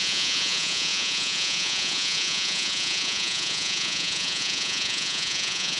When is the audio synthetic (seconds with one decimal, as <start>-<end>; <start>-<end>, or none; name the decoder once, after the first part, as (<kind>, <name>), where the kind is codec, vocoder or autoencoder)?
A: 0.0-5.8 (vocoder, Vocos)